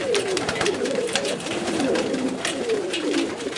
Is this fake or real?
fake